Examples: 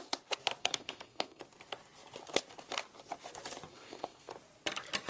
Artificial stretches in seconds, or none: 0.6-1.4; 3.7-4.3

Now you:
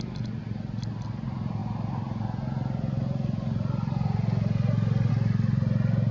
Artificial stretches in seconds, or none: none

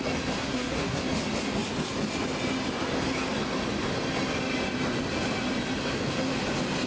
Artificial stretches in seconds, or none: 0.4-1.0

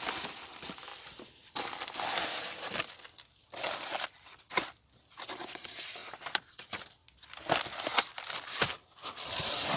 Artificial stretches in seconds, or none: none